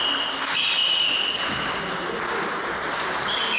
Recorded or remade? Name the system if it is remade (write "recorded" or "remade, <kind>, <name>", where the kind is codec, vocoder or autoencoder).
recorded